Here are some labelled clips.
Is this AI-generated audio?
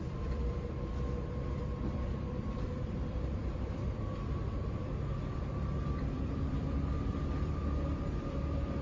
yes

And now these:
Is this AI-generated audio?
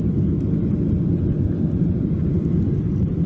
no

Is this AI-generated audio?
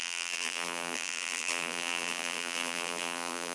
yes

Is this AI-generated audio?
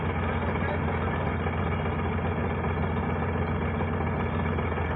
no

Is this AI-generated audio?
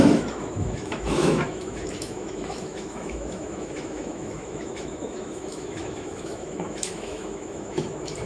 yes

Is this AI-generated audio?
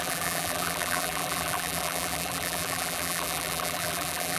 yes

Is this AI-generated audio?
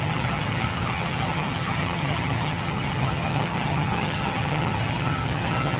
yes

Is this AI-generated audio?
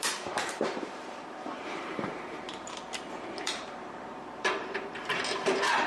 yes